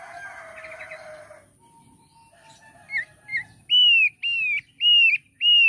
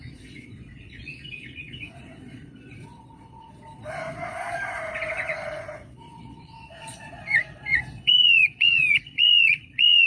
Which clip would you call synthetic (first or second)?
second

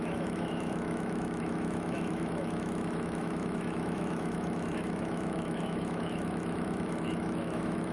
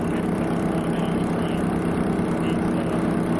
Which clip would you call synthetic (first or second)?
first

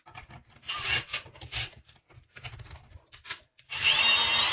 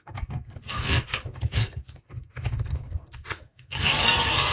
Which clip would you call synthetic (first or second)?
second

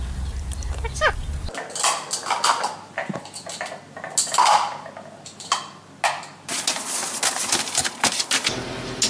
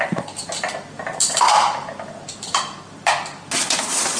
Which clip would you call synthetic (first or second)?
second